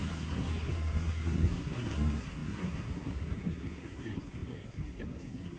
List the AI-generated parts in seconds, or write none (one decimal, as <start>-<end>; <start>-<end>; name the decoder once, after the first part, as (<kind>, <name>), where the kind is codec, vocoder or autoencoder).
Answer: 0.0-5.6 (codec, SNAC)